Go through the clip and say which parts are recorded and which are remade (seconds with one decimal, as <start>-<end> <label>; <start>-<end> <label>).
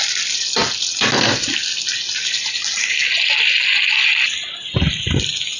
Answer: 0.0-5.6 recorded